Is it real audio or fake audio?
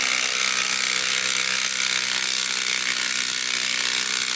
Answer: real